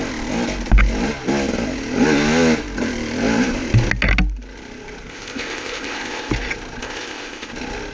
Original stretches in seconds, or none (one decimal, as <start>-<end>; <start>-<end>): 0.0-5.1; 6.3-6.8; 7.5-7.9